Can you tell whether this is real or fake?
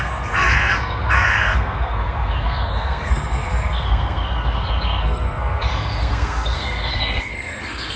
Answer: fake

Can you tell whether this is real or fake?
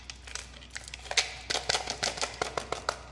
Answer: real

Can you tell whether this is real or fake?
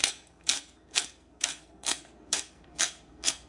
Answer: fake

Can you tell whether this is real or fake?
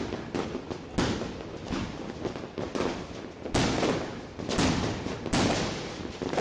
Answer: real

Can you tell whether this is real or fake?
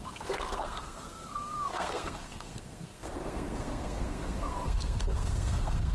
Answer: fake